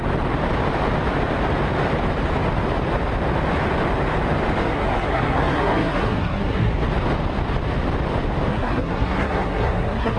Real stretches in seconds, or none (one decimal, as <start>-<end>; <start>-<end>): 0.0-4.6; 6.7-8.5